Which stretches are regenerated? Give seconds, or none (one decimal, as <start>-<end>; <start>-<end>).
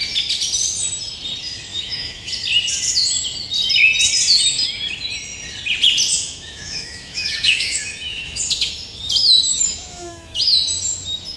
1.7-2.3; 6.1-8.4; 9.5-10.4